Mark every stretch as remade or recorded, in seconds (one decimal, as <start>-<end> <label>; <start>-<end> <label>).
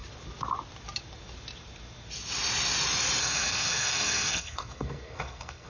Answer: 0.0-3.2 recorded; 3.2-5.7 remade